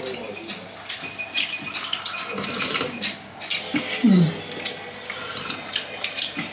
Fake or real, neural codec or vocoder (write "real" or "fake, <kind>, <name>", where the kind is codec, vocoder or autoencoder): real